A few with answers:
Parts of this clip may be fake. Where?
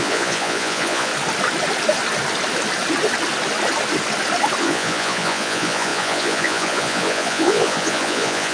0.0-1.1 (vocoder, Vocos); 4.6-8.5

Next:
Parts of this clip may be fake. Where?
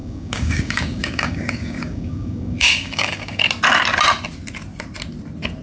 0.0-3.4 (codec, DAC)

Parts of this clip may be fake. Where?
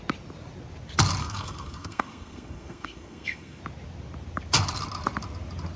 1.2-3.6 (codec, SNAC)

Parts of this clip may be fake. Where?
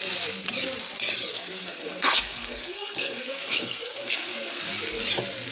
1.3-4.6 (codec, SNAC)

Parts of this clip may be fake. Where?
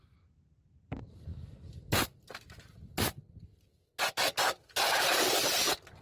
none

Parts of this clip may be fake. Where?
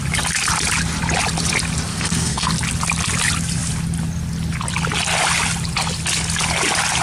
1.9-2.5 (codec, SNAC)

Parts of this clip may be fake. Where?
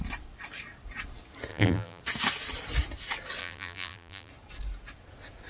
1.5-2.0 (vocoder, BigVGAN v2); 3.4-4.3